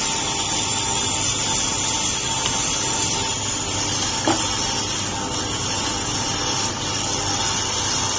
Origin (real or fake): real